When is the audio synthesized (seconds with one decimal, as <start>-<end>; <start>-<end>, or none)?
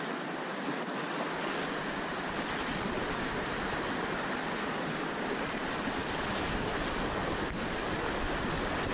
none